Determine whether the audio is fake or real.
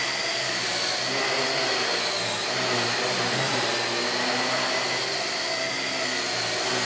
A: real